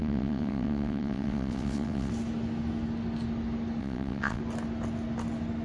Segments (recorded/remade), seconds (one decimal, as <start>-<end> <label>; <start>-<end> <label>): 0.0-2.1 remade; 2.1-3.8 recorded; 3.8-4.4 remade; 4.4-5.6 recorded